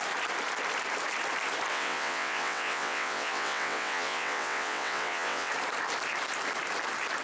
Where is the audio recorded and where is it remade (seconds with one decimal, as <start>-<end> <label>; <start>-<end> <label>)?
0.0-1.7 recorded; 1.7-5.5 remade; 5.5-7.2 recorded